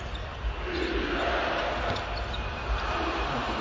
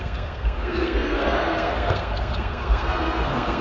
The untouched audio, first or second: first